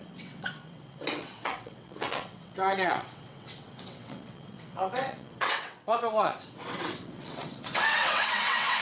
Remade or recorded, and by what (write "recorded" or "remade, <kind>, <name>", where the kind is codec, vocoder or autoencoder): remade, vocoder, WaveNeXt